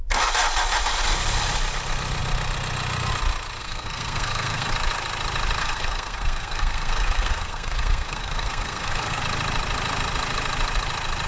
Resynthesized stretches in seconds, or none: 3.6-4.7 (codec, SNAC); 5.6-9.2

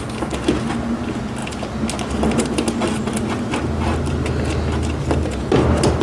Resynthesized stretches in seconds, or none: none

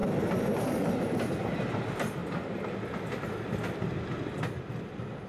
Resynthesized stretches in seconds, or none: none

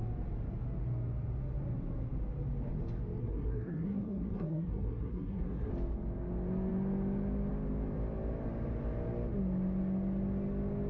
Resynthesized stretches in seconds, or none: 3.2-5.7 (codec, SNAC)

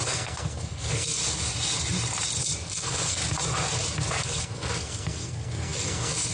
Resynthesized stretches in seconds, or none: 0.0-1.2 (codec, SNAC); 2.7-3.2; 4.1-6.3

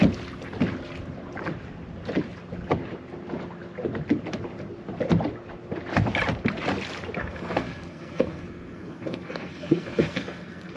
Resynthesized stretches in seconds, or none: 7.2-10.8 (codec, SNAC)